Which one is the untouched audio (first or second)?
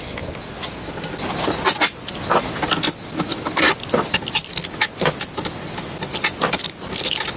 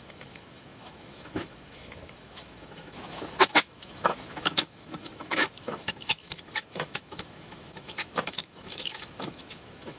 first